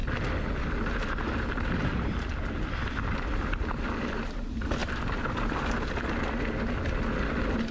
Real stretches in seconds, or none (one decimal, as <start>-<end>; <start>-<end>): 0.0-7.7